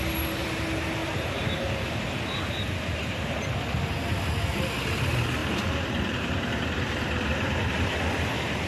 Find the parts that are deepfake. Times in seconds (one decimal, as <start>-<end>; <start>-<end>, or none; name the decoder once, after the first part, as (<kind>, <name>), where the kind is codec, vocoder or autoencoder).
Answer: 1.0-3.3 (vocoder, BigVGAN v2); 5.4-8.7